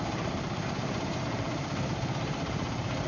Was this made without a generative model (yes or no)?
no